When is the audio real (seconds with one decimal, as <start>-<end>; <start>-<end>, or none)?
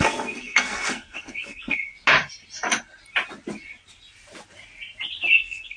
1.9-5.3